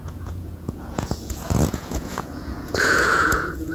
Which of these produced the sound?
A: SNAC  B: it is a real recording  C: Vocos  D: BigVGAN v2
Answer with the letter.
C